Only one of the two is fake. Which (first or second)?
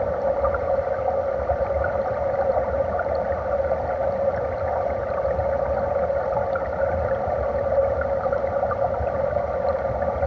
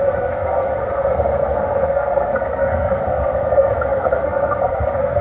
second